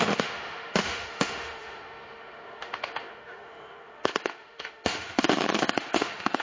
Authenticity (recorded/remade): remade